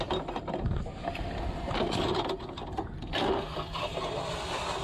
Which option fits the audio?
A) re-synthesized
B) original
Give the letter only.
B